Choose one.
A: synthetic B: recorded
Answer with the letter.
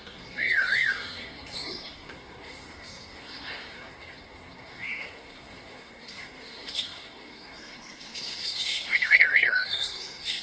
A